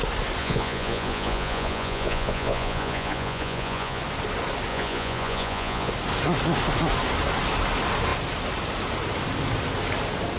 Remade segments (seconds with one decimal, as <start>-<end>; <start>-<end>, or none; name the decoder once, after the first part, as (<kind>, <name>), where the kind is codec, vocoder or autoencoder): 0.4-4.0 (vocoder, Vocos); 4.7-5.9